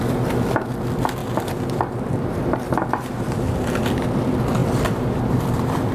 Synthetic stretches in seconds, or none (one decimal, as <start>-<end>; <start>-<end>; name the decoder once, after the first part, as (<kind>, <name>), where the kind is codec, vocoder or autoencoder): 1.2-4.0 (vocoder, BigVGAN v2); 4.6-5.9